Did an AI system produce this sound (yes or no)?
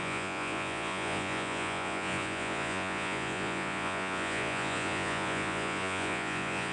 yes